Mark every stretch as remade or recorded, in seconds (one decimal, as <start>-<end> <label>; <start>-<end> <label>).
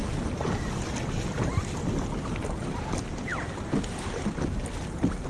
0.0-5.3 recorded